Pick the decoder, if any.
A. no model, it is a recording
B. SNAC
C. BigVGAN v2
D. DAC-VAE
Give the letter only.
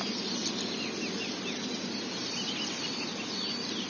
A